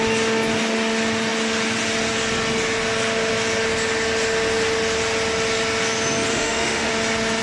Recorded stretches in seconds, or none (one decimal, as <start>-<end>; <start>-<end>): 0.0-6.3; 6.9-7.4